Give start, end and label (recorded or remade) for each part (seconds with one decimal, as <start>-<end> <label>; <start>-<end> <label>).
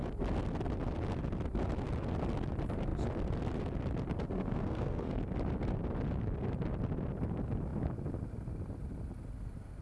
0.0-4.2 recorded; 4.2-5.2 remade; 5.2-9.8 recorded